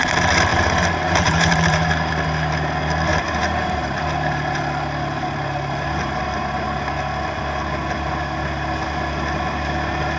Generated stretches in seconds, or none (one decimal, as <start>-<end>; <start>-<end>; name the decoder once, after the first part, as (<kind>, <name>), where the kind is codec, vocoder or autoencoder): 0.5-1.9 (vocoder, BigVGAN v2); 3.1-6.2